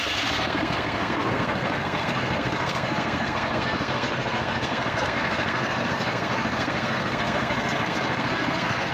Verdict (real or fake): fake